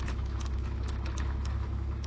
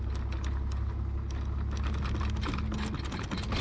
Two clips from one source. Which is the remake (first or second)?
first